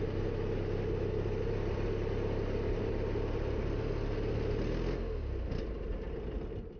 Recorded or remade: recorded